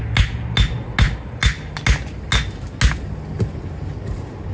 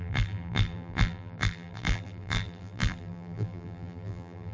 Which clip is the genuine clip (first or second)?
first